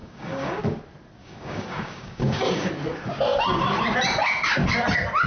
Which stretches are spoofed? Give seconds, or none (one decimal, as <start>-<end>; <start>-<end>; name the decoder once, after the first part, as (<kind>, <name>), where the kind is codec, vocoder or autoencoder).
0.0-0.6 (codec, DAC); 1.2-2.7